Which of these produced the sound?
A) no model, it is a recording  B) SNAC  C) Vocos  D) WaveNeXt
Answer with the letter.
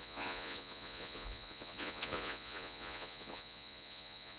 C